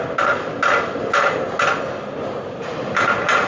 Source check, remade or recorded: recorded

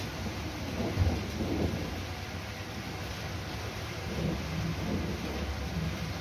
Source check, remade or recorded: recorded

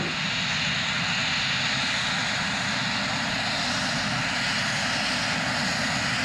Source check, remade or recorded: recorded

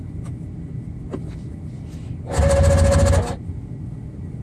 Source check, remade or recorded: recorded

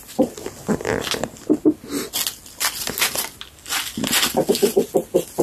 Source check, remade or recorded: recorded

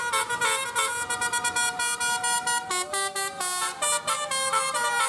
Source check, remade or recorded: recorded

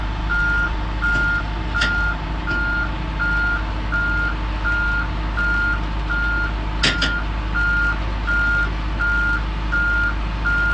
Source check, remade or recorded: recorded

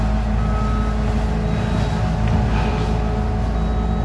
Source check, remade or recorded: recorded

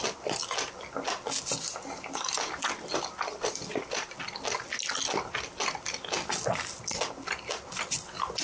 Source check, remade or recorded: recorded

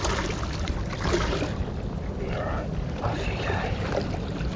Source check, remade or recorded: remade